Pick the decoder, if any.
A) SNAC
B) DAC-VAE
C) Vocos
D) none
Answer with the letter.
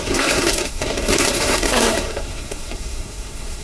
A